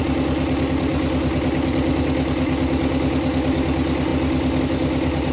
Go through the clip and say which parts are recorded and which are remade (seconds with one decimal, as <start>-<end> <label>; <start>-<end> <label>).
0.0-5.3 recorded